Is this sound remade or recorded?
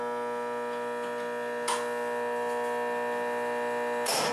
recorded